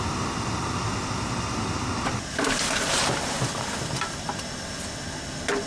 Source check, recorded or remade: recorded